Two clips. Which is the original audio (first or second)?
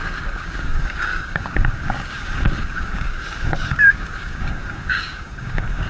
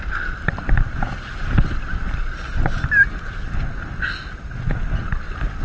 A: second